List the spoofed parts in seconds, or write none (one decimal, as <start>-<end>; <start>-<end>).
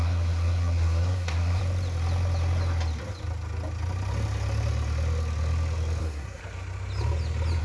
0.0-1.6; 6.0-6.4